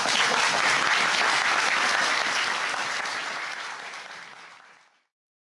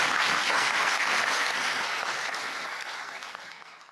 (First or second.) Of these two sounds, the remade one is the second